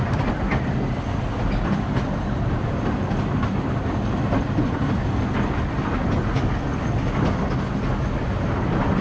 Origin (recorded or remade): recorded